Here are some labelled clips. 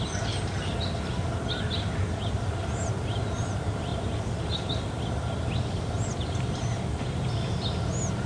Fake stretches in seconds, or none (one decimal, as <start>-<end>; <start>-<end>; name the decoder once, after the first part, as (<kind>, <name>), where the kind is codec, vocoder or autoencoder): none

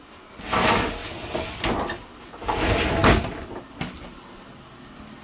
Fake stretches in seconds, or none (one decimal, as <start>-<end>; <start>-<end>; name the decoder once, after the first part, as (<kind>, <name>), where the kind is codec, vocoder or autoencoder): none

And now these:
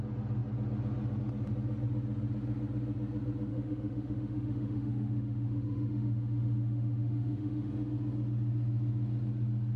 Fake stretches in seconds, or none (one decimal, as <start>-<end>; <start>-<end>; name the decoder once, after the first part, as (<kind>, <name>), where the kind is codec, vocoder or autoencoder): 3.5-7.7 (autoencoder, DAC-VAE)

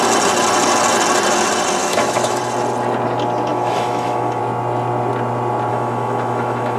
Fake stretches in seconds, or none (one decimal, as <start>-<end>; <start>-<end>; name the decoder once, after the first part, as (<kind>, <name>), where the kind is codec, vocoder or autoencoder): 1.8-2.4 (autoencoder, DAC-VAE); 3.5-4.4; 5.7-6.8

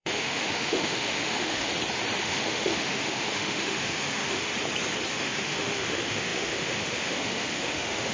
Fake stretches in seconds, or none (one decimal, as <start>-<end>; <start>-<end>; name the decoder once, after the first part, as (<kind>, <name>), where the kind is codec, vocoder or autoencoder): 0.0-1.7 (autoencoder, DAC-VAE); 2.2-4.5; 5.1-8.1